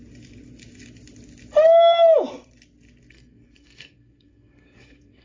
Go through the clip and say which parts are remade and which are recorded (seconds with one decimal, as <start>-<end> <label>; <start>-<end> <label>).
0.0-3.1 recorded; 3.1-5.2 remade